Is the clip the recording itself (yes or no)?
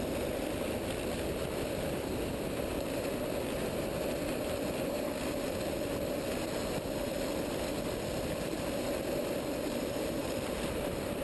yes